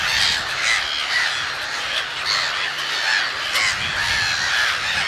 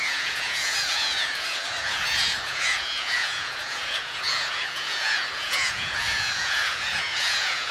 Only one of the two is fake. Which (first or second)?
second